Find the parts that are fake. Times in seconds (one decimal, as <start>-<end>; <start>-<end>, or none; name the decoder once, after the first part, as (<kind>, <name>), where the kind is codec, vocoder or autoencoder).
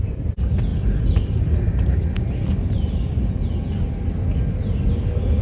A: none